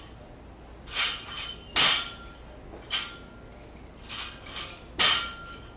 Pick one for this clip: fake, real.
real